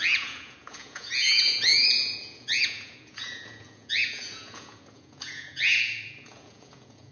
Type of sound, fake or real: fake